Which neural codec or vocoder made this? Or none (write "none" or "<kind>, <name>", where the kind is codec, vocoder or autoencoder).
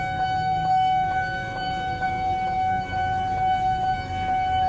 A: autoencoder, DAC-VAE